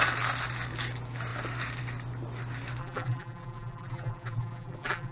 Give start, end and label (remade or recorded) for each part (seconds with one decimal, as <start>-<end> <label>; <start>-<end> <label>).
0.0-2.8 recorded; 2.8-5.1 remade